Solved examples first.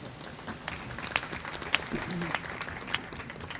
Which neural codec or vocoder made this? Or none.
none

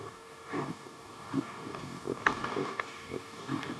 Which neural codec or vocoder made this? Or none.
codec, DAC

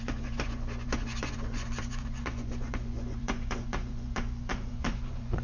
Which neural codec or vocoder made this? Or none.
vocoder, Vocos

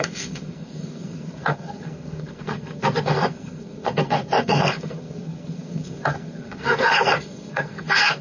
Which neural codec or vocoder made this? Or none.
codec, SNAC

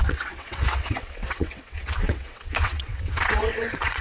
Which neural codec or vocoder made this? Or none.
vocoder, WaveNeXt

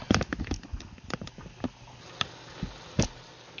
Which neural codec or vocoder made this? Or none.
none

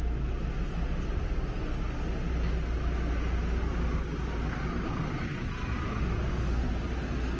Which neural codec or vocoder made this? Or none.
none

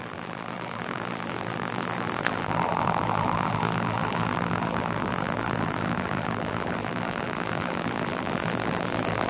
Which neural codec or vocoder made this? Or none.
vocoder, BigVGAN v2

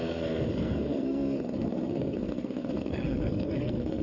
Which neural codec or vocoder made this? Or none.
codec, SNAC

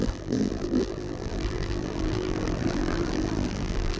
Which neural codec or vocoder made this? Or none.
vocoder, BigVGAN v2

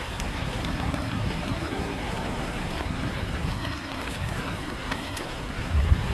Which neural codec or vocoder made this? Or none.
codec, SNAC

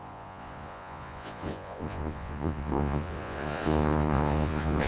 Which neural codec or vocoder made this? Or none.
vocoder, Vocos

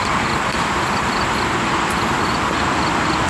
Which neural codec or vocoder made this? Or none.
vocoder, BigVGAN v2